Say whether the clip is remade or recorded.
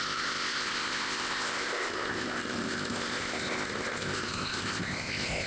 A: remade